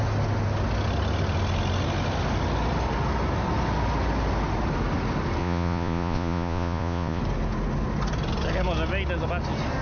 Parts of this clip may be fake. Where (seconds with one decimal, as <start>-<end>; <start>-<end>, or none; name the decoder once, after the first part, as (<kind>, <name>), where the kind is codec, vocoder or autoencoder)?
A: 5.4-7.2 (vocoder, Vocos)

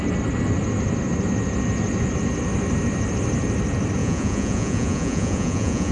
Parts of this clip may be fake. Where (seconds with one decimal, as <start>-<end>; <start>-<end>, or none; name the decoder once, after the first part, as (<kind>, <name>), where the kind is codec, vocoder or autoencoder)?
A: 4.0-5.9 (vocoder, Vocos)

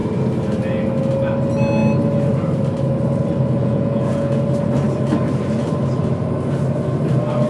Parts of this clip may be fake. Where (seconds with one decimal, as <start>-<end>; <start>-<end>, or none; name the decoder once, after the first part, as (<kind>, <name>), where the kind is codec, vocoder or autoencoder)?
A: 3.6-4.4 (vocoder, Vocos)

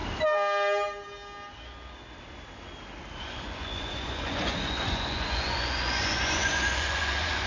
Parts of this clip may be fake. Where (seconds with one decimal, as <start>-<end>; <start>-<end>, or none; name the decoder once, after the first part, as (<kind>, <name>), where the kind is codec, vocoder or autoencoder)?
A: 3.2-7.5 (vocoder, Vocos)